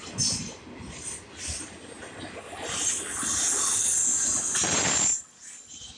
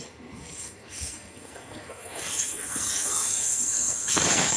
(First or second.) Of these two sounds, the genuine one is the first